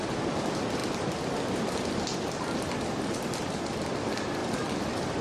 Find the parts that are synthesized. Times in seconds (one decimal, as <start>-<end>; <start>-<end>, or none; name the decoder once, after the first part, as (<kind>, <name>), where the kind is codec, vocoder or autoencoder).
0.0-5.2 (vocoder, BigVGAN v2)